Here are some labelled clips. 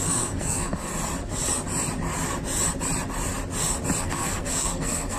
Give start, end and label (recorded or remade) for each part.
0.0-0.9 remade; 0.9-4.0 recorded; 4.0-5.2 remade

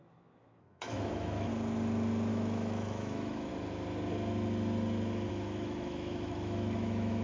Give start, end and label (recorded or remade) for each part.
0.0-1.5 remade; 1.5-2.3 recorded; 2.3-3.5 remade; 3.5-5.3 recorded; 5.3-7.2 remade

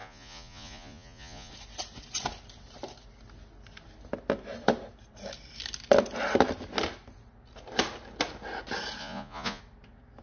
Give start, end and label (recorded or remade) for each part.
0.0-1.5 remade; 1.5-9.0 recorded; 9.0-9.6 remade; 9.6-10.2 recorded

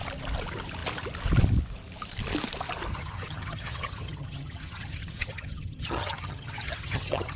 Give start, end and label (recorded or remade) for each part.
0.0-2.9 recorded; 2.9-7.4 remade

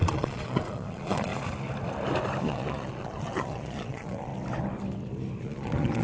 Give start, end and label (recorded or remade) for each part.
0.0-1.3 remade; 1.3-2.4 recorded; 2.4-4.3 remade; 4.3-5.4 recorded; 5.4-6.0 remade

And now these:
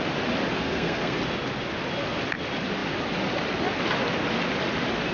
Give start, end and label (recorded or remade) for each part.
0.0-0.5 recorded; 0.5-1.2 remade; 1.2-5.1 recorded

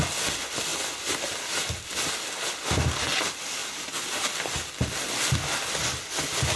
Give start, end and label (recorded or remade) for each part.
0.0-6.6 recorded

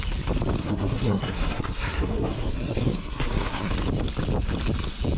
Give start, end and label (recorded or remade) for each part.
0.0-0.6 recorded; 0.6-3.7 remade; 3.7-5.2 recorded